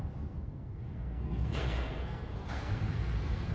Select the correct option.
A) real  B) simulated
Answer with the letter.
B